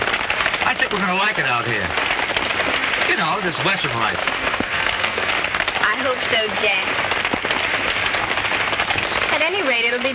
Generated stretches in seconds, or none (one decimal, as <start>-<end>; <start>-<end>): 4.4-5.3